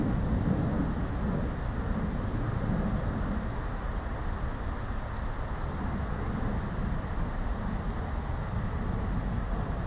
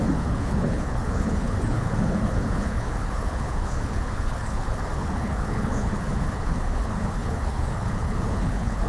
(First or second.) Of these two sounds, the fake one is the second